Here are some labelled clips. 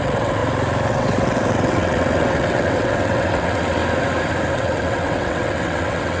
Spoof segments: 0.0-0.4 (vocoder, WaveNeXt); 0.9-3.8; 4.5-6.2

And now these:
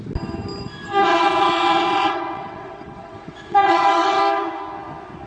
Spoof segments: 1.0-4.2 (vocoder, WaveNeXt)

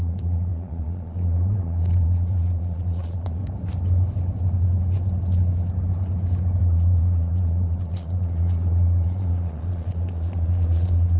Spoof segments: 0.0-3.4 (vocoder, Vocos); 6.6-11.2

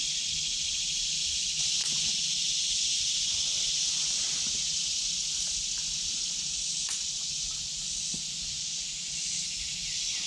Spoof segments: none

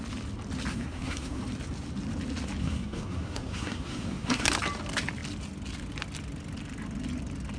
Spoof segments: 0.7-1.4 (codec, SNAC); 2.6-4.5

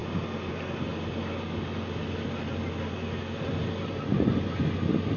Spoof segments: none